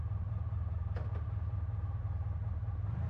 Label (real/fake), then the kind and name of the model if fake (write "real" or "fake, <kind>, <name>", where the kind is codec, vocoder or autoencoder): real